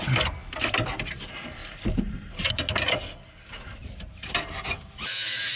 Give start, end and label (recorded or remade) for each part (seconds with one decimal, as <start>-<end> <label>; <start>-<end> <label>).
0.0-1.6 recorded; 1.6-2.5 remade; 2.5-3.8 recorded; 3.8-5.6 remade